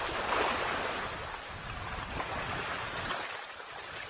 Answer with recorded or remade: recorded